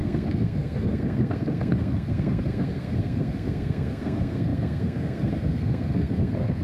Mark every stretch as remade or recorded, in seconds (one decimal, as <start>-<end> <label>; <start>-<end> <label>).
0.0-6.6 remade